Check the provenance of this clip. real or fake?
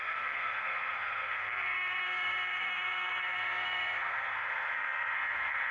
fake